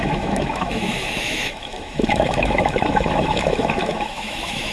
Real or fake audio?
fake